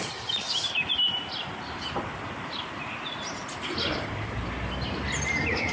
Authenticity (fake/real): real